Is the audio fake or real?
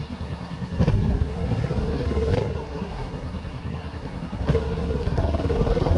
fake